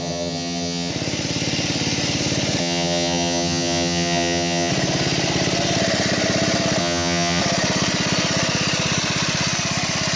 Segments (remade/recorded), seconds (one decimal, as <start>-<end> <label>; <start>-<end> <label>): 0.0-0.9 remade; 0.9-2.6 recorded; 2.6-4.7 remade; 4.7-6.8 recorded; 6.8-7.4 remade; 7.4-10.2 recorded

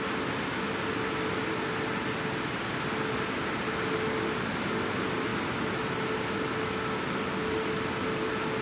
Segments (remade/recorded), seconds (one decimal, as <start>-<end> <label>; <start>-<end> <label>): 0.0-8.6 recorded

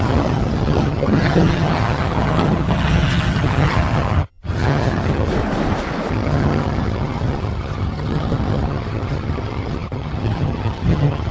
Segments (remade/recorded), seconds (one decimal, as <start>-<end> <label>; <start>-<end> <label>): 0.0-5.3 remade; 5.3-6.1 recorded; 6.1-11.3 remade

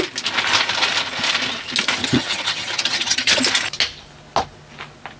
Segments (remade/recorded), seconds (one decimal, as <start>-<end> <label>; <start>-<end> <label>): 0.0-2.0 recorded; 2.0-3.4 remade; 3.4-5.2 recorded

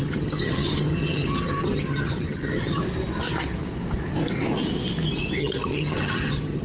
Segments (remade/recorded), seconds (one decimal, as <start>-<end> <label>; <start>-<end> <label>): 0.0-2.8 remade; 2.8-5.4 recorded; 5.4-6.6 remade

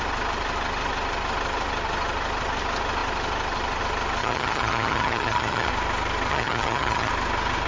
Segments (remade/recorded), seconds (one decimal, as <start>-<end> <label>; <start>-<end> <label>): 0.0-4.2 recorded; 4.2-5.7 remade; 5.7-6.3 recorded; 6.3-7.1 remade; 7.1-7.7 recorded

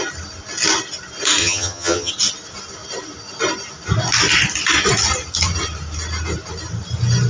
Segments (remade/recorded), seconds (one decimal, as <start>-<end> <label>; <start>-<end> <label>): 0.0-1.4 recorded; 1.4-2.1 remade; 2.1-7.3 recorded

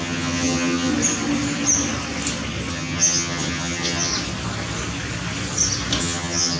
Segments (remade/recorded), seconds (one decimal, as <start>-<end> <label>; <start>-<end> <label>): 0.0-0.9 remade; 0.9-2.7 recorded; 2.7-4.1 remade; 4.1-6.0 recorded; 6.0-6.6 remade